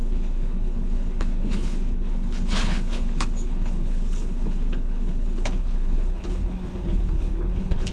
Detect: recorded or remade remade